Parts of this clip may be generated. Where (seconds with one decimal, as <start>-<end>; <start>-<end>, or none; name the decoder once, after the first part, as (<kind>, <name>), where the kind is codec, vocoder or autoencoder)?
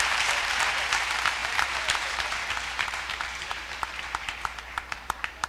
0.0-5.5 (vocoder, BigVGAN v2)